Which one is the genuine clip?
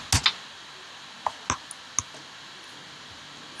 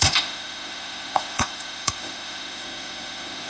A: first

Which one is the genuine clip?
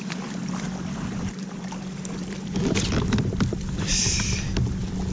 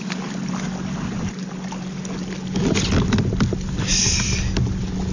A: second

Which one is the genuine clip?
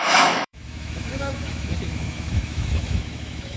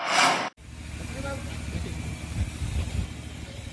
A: second